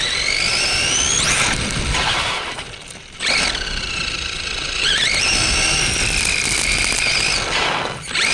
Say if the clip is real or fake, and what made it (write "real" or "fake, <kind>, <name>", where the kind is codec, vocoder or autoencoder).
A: real